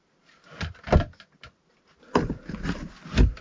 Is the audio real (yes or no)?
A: yes